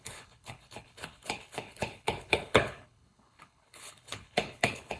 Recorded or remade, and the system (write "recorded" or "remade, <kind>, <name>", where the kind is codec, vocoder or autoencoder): remade, codec, HILCodec